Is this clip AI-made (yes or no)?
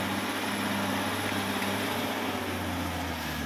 no